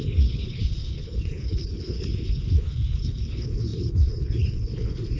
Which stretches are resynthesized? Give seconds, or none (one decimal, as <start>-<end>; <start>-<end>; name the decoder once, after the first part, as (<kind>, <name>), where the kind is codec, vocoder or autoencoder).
0.0-5.2 (codec, HILCodec)